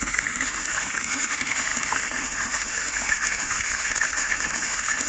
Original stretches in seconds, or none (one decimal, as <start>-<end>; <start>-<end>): none